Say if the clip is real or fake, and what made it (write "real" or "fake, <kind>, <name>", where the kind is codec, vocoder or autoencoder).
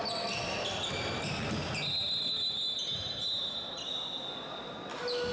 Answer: real